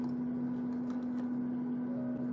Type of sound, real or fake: real